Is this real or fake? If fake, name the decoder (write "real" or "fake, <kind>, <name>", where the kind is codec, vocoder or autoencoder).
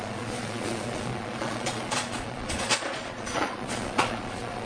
fake, vocoder, Vocos